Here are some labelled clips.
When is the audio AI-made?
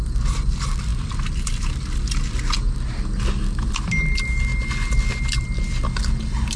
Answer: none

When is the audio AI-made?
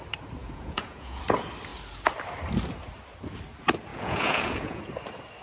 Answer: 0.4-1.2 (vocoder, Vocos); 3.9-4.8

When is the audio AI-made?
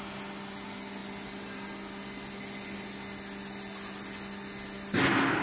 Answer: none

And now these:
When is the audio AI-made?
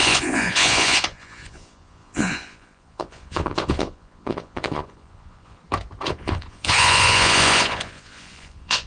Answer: 0.0-5.6 (vocoder, Vocos); 6.1-8.9